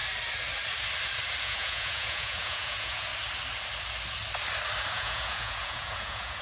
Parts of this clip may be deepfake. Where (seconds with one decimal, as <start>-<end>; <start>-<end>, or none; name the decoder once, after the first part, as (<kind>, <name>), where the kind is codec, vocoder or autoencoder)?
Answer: 1.4-3.1 (vocoder, Vocos); 4.9-6.4